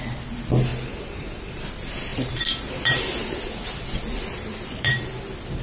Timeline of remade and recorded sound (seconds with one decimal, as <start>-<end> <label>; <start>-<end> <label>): 0.0-0.7 recorded; 0.7-1.5 remade; 1.5-2.1 recorded; 2.1-5.1 remade; 5.1-5.6 recorded